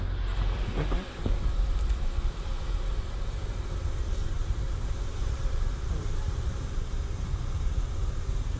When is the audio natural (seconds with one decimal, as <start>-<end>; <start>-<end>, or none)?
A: 0.0-4.2